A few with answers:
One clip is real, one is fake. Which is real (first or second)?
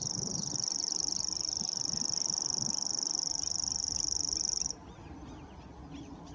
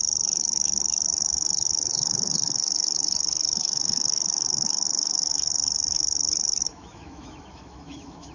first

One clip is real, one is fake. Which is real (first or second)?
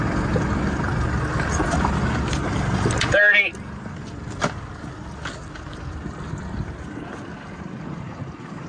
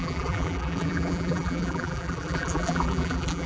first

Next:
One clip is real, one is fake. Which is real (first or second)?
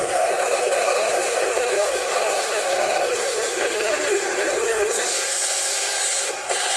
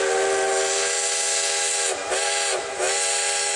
second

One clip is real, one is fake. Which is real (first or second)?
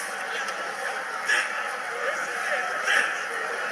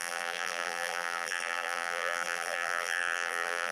first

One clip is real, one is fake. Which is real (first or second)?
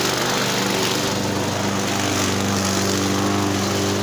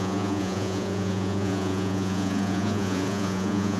first